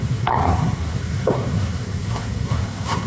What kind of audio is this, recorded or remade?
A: remade